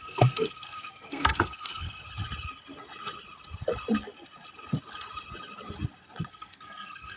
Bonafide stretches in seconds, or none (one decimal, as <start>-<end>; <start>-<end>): 2.0-6.3